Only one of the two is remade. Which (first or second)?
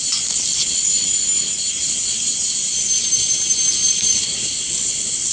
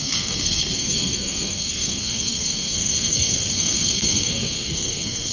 second